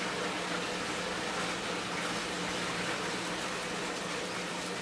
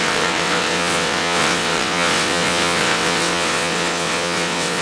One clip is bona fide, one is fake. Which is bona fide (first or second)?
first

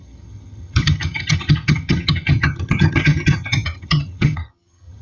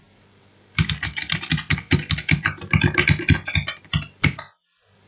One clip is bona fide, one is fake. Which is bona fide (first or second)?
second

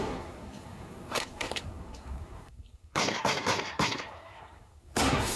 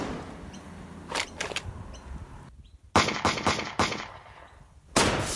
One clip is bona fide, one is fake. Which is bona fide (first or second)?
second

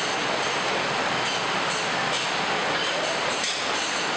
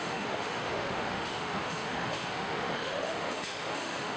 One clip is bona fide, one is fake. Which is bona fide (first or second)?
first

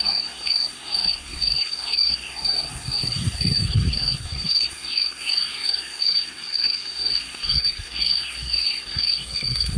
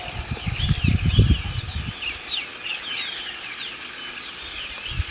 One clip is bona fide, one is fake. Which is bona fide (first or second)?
second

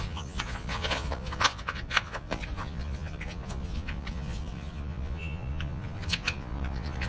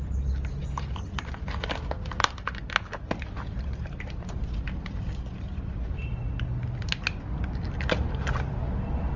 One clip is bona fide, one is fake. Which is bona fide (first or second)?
second